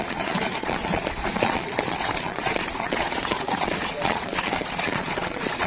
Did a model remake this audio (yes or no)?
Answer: yes